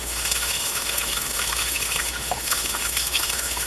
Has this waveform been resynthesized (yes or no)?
yes